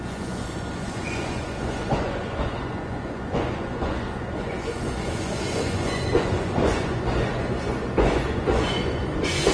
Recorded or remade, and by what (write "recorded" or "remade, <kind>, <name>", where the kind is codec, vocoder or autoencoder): remade, vocoder, Vocos